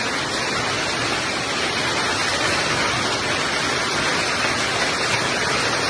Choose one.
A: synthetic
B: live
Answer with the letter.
B